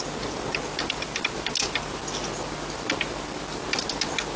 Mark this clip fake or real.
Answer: real